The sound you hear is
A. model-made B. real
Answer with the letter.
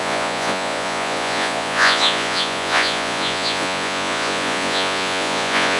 A